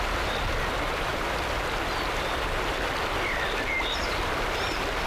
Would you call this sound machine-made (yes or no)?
no